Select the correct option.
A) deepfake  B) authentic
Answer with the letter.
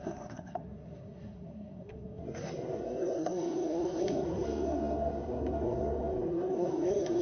A